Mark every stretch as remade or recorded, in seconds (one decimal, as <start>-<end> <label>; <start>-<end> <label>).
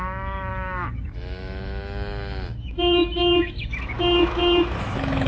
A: 0.0-5.3 remade